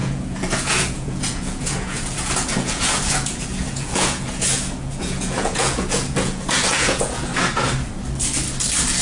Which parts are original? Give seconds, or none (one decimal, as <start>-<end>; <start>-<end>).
7.3-9.0